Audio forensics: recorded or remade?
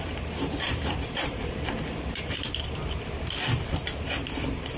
remade